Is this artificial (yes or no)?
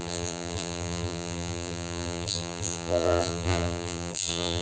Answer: yes